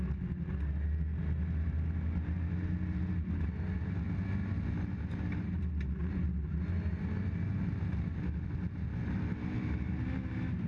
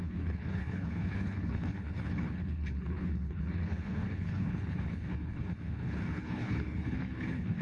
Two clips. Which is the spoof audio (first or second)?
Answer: second